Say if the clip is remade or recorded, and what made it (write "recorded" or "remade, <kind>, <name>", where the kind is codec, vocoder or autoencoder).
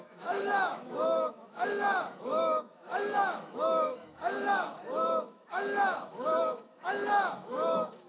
remade, autoencoder, DAC-VAE